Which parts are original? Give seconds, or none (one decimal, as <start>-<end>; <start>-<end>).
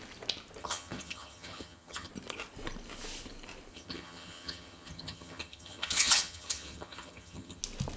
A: 0.0-0.6; 2.1-3.7; 7.6-8.0